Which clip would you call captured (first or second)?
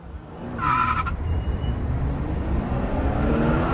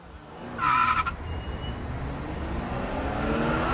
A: second